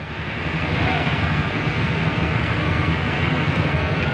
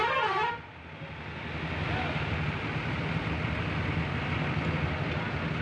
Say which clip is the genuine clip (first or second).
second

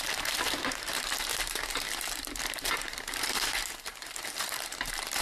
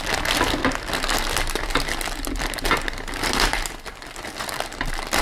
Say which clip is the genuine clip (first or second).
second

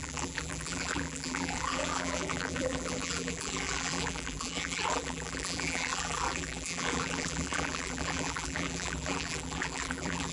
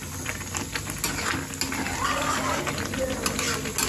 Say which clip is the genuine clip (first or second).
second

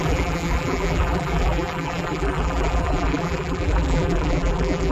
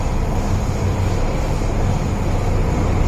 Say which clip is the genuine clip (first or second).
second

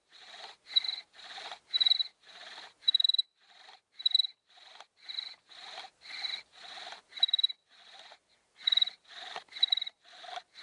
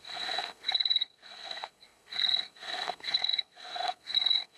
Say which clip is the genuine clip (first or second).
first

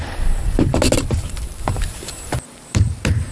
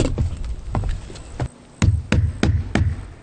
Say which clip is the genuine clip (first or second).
second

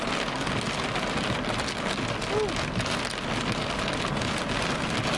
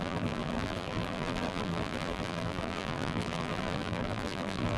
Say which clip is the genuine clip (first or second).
first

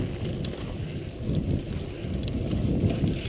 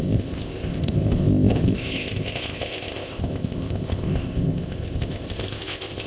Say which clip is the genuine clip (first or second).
first